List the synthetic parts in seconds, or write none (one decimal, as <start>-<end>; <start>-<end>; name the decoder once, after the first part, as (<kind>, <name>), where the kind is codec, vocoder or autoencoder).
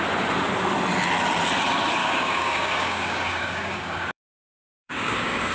2.0-5.5 (codec, DAC)